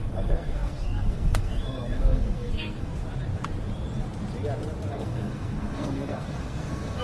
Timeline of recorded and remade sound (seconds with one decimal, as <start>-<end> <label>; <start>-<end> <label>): 0.0-2.9 remade; 2.9-4.9 recorded; 4.9-7.0 remade